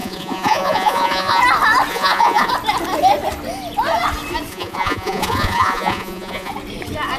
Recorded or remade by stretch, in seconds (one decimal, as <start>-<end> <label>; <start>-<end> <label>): 0.0-1.4 remade; 1.4-1.9 recorded; 1.9-2.5 remade; 2.5-4.5 recorded; 4.5-6.5 remade; 6.5-7.2 recorded